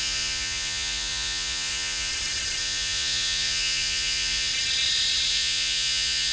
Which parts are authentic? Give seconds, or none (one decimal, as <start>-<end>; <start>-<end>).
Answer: 2.1-2.6; 4.5-5.3